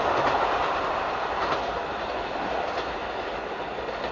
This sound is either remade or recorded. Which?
recorded